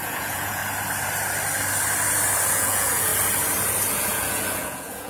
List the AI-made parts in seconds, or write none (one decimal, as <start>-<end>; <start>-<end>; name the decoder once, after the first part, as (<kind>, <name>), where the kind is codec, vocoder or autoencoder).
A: 0.0-0.6 (vocoder, Vocos); 2.5-3.1; 3.9-5.1

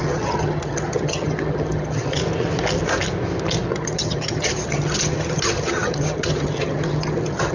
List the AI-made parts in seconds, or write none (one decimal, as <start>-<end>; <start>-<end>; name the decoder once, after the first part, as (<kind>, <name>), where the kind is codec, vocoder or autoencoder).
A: 0.0-2.2 (vocoder, HiFi-GAN); 3.7-7.5

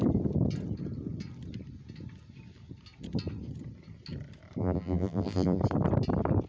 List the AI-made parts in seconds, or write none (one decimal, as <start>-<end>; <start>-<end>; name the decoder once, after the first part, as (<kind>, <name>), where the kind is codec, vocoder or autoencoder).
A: 4.6-5.6 (vocoder, BigVGAN v2)

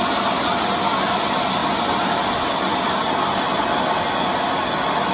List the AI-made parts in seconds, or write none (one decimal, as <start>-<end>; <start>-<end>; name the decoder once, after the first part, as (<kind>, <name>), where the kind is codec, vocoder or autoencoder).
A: none

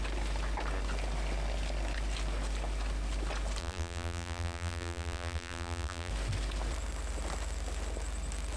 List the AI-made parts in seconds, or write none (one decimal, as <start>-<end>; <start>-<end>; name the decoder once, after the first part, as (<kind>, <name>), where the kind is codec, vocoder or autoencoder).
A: 3.6-6.1 (vocoder, BigVGAN v2)

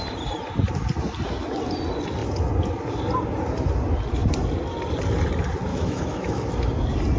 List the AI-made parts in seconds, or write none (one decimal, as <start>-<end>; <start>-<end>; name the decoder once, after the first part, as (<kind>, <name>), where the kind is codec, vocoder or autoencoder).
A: 5.7-6.5 (autoencoder, DAC-VAE)

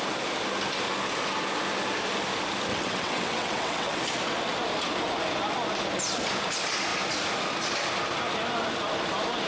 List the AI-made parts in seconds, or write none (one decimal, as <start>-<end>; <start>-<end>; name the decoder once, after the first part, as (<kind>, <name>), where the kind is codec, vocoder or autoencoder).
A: 2.7-4.0 (vocoder, WaveNeXt)